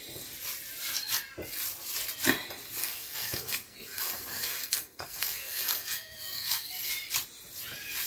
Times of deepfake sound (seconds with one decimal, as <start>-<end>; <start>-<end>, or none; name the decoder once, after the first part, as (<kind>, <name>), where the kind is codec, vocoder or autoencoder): 2.8-6.9 (codec, SNAC)